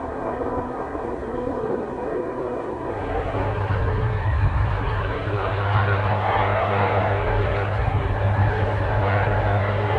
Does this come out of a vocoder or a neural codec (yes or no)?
yes